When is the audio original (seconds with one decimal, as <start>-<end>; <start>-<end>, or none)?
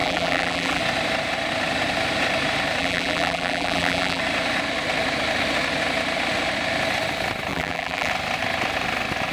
0.8-2.8; 4.2-7.5; 8.1-9.3